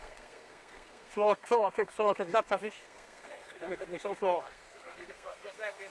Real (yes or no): no